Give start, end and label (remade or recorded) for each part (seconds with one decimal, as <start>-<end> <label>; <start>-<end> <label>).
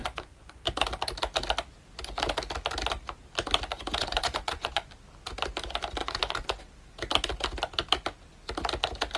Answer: 0.0-0.6 remade; 0.6-4.0 recorded; 4.0-4.9 remade; 4.9-6.0 recorded; 6.0-6.6 remade; 6.6-9.2 recorded